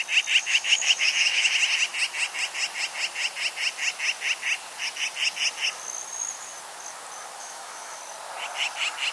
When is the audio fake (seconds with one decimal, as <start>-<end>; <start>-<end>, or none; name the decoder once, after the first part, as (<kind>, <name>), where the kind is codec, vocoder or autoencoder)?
0.4-1.5 (autoencoder, DAC-VAE); 7.4-8.0